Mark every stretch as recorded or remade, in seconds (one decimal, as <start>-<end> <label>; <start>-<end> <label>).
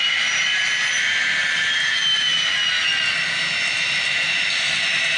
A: 0.0-5.2 recorded